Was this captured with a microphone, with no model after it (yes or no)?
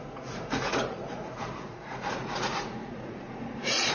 no